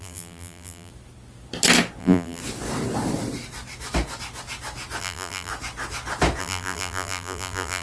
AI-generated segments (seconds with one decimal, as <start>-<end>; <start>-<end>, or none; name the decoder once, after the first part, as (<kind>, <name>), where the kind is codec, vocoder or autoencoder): 0.0-0.9 (vocoder, BigVGAN v2); 2.0-2.4; 5.0-5.5; 6.4-7.8